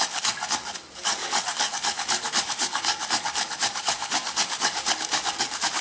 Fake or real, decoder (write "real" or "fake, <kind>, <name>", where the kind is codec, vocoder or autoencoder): fake, codec, DAC